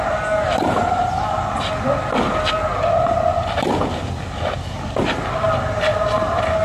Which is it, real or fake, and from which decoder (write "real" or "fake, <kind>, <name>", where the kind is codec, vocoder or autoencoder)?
real